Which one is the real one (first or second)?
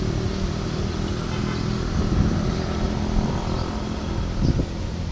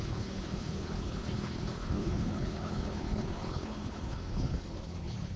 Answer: first